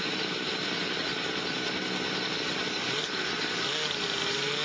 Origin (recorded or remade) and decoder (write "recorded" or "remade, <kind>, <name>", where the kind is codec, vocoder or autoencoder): recorded